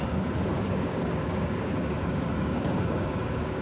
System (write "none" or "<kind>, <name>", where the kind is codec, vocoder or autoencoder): codec, DAC